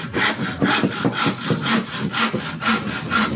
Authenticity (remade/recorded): recorded